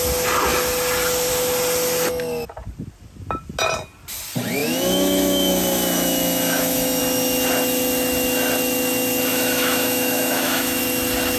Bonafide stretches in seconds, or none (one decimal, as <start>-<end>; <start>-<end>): 0.0-4.6; 7.0-9.3; 10.8-11.4